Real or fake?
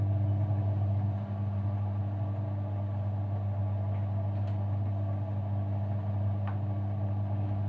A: real